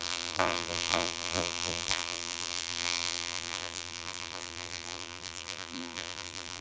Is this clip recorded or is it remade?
remade